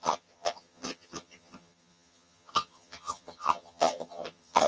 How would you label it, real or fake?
fake